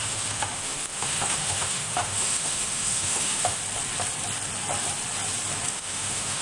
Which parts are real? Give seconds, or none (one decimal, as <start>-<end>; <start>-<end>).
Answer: 3.6-5.7